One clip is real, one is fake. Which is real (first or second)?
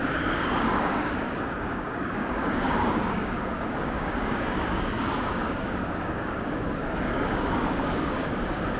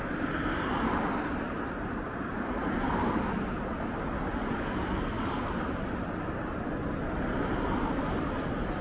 second